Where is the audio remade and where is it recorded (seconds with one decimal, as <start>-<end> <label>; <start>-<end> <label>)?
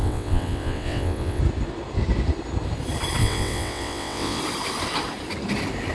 0.0-1.4 remade; 1.4-3.2 recorded; 3.2-4.4 remade; 4.4-5.9 recorded